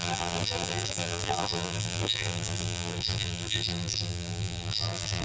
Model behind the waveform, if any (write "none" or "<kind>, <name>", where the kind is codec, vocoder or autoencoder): vocoder, BigVGAN v2